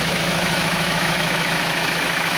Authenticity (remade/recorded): remade